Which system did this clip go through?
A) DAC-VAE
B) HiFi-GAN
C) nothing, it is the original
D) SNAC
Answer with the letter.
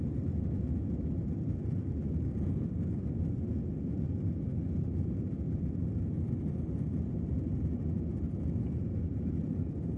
C